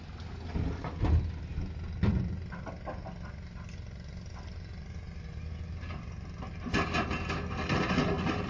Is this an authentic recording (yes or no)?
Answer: yes